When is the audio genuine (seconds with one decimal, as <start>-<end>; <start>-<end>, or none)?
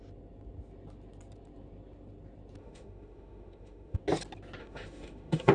0.0-2.6; 4.0-4.6